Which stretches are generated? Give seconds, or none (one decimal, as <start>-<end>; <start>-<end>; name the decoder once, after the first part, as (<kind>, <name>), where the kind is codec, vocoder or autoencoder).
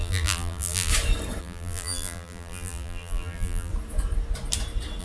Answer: 0.0-0.9 (vocoder, BigVGAN v2); 1.4-3.7